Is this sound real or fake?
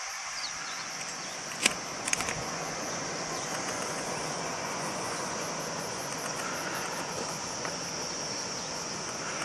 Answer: fake